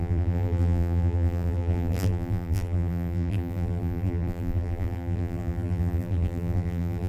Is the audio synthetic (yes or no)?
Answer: yes